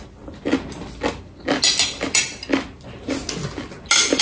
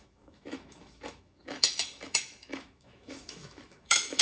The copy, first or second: second